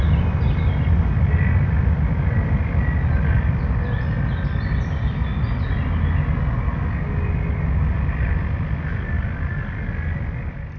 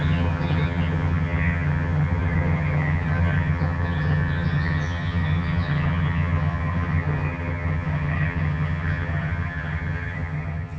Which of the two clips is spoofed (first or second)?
second